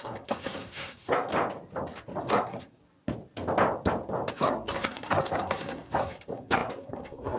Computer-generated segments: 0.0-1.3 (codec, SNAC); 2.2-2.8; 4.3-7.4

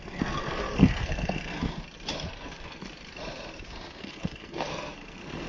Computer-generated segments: 0.0-1.7 (codec, SNAC); 2.3-2.8; 4.0-5.5